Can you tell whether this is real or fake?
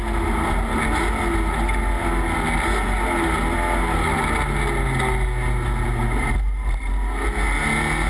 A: real